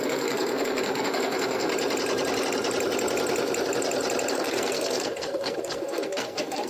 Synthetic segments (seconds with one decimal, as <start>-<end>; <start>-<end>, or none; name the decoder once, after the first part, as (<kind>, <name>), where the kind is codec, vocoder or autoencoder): 0.0-1.7 (codec, SNAC); 4.3-6.7